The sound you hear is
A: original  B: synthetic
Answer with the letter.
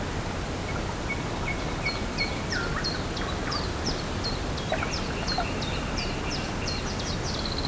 A